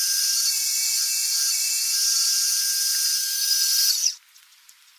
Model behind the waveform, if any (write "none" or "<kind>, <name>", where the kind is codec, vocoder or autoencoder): vocoder, BigVGAN v2